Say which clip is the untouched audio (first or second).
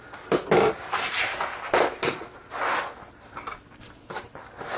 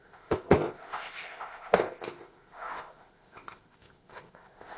first